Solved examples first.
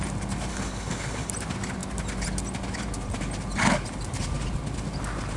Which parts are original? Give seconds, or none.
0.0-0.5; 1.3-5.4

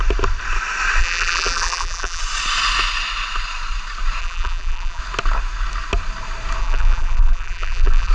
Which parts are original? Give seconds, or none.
0.0-1.0; 2.2-4.2; 5.0-6.6

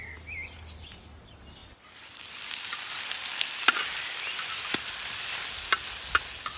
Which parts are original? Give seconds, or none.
0.0-1.6; 5.2-6.6

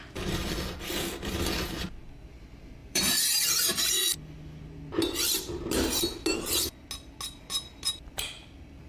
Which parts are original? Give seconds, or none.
0.0-2.8; 3.9-8.9

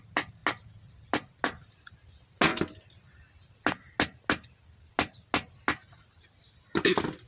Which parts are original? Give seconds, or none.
0.0-7.3